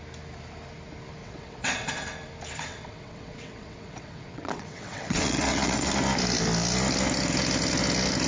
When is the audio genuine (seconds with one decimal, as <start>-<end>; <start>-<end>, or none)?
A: 0.0-1.2; 1.9-2.7; 5.9-8.3